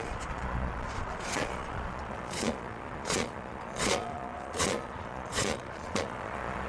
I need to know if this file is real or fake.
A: fake